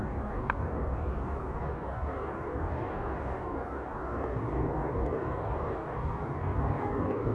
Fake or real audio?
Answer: fake